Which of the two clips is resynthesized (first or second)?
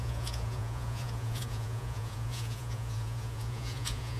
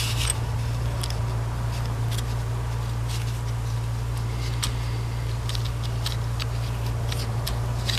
first